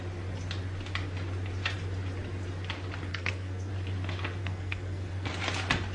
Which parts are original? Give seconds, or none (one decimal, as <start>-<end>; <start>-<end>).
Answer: 0.0-3.1; 3.7-4.4; 5.3-5.9